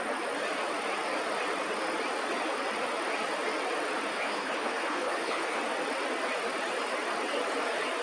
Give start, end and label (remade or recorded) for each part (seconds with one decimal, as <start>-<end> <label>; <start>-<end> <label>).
0.0-4.1 recorded; 4.1-5.6 remade; 5.6-8.0 recorded